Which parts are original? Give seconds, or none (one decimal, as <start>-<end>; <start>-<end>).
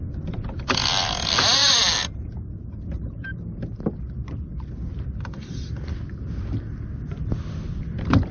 0.0-8.3